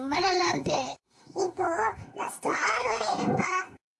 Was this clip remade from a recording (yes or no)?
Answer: yes